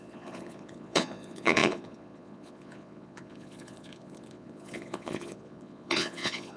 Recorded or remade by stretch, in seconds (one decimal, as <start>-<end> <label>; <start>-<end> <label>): 0.0-6.6 remade